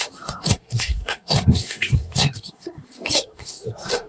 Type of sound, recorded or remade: remade